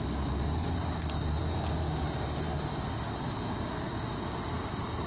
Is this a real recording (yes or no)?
yes